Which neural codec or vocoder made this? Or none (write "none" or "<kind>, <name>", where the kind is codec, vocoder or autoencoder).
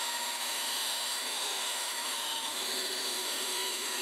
autoencoder, DAC-VAE